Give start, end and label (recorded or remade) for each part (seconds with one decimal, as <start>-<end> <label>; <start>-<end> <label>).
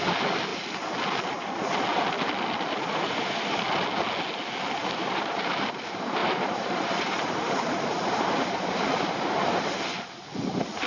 0.0-5.0 recorded; 5.0-5.8 remade; 5.8-6.2 recorded; 6.2-9.7 remade; 9.7-10.9 recorded